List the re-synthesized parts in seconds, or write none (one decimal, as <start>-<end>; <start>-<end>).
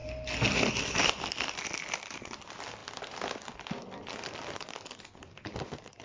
0.0-1.0